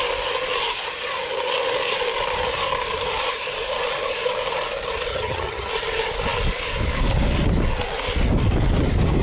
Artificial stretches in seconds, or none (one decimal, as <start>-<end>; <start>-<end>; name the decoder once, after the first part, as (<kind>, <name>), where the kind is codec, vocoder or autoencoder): 5.1-5.7 (vocoder, HiFi-GAN)